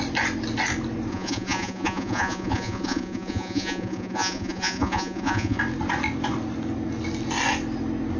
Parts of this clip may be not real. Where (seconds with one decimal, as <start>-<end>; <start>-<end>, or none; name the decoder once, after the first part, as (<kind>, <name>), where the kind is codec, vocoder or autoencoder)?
1.1-5.6 (vocoder, Vocos)